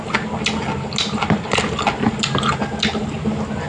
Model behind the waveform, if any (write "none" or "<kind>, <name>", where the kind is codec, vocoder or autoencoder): none